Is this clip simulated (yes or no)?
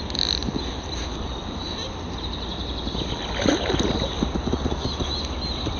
no